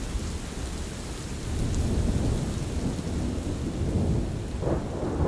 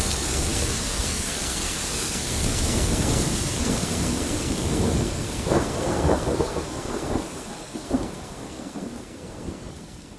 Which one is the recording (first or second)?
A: first